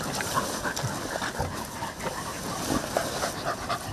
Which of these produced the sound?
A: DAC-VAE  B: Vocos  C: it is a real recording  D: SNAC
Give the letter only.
C